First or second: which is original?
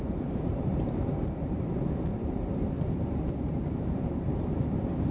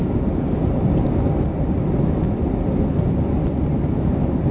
second